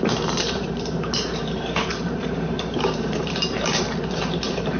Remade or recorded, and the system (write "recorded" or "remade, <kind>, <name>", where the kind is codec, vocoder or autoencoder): remade, vocoder, BigVGAN v2